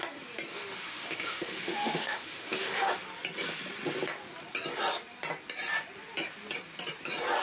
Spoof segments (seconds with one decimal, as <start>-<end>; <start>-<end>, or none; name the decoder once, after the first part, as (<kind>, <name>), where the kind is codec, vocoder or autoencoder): 0.5-2.9 (autoencoder, DAC-VAE)